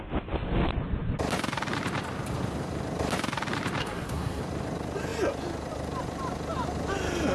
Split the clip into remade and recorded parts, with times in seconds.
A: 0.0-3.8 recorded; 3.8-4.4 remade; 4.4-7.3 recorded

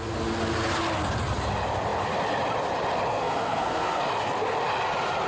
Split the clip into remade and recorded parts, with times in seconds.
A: 0.0-3.1 recorded; 3.1-4.0 remade; 4.0-5.3 recorded

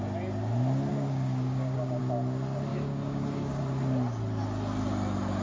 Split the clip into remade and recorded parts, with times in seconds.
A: 0.0-0.9 recorded; 0.9-2.0 remade; 2.0-2.7 recorded; 2.7-3.6 remade; 3.6-5.4 recorded

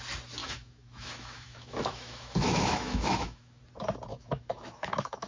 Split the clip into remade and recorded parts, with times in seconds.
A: 0.0-0.4 recorded; 0.4-3.6 remade; 3.6-4.1 recorded; 4.1-5.3 remade